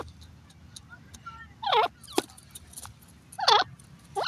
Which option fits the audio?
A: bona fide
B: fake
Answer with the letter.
A